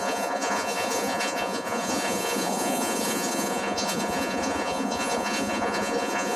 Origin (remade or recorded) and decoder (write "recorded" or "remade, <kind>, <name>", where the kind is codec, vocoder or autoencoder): remade, vocoder, Vocos